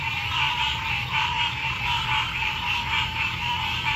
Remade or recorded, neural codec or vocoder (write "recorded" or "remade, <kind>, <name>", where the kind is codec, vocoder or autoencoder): remade, vocoder, BigVGAN v2